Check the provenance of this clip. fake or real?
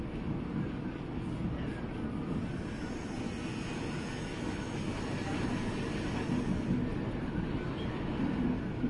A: real